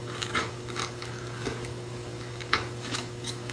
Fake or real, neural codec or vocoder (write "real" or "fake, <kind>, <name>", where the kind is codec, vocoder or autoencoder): fake, codec, DAC